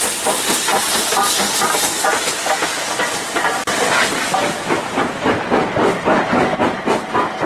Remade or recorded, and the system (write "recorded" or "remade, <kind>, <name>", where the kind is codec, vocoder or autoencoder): recorded